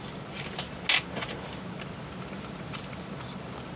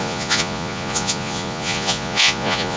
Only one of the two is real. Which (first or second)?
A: first